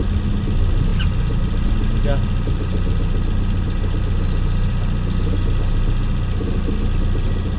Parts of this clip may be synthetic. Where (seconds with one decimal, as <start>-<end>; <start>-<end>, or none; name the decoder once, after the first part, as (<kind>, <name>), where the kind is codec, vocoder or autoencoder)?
none